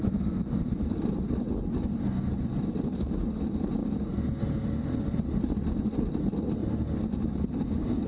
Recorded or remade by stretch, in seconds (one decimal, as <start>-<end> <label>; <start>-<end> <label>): 0.0-3.8 recorded; 3.8-4.7 remade; 4.7-6.6 recorded; 6.6-8.1 remade